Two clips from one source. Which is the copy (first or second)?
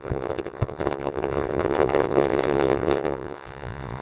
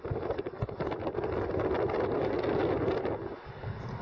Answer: first